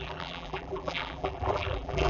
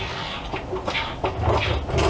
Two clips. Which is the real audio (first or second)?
second